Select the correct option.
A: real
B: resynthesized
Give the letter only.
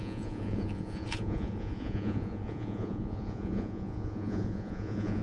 B